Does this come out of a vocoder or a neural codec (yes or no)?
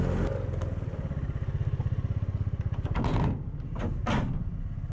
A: no